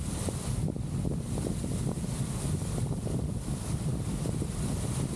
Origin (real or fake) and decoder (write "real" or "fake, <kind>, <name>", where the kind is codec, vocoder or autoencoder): real